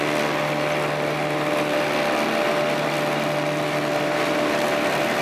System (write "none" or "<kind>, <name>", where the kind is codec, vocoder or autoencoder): none